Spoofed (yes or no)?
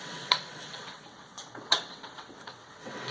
yes